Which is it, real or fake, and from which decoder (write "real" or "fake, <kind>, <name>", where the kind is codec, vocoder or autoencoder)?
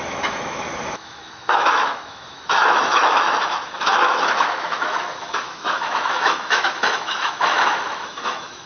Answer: fake, autoencoder, DAC-VAE